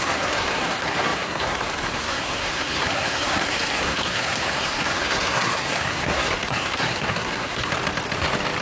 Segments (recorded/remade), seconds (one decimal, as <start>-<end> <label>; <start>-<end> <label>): 0.0-7.7 remade; 7.7-8.6 recorded

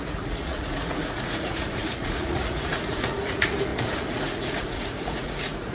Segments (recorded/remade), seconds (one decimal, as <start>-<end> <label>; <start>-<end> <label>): 0.0-5.7 remade

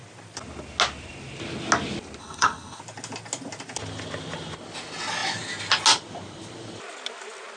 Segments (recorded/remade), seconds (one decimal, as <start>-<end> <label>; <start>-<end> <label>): 0.0-2.2 recorded; 2.2-2.8 remade; 2.8-7.6 recorded

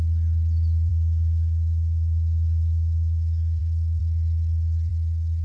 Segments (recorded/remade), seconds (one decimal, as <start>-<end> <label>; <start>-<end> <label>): 0.0-0.9 recorded; 0.9-3.6 remade; 3.6-5.4 recorded